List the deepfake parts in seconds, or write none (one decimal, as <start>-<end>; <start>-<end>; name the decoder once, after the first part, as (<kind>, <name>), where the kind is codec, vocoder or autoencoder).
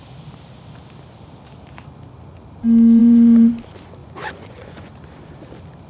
3.0-3.5 (vocoder, Vocos); 4.0-4.9